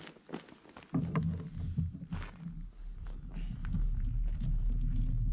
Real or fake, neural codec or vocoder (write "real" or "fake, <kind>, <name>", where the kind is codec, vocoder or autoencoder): real